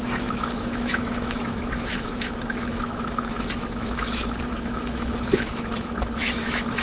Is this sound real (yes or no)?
no